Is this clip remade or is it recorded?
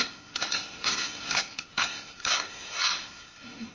remade